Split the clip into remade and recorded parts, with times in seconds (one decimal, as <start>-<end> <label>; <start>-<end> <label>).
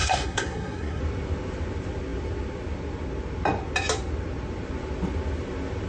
0.0-1.0 remade; 1.0-5.9 recorded